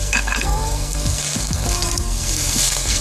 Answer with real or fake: fake